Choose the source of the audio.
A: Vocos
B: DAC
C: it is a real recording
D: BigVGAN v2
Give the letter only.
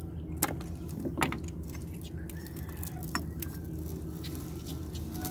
C